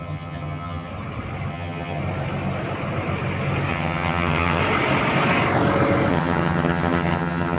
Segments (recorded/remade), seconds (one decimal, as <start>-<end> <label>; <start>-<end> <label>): 0.0-0.9 remade; 0.9-1.5 recorded; 1.5-2.0 remade; 2.0-3.7 recorded; 3.7-4.6 remade; 4.6-6.1 recorded; 6.1-7.6 remade